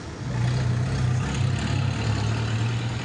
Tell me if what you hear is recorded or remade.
recorded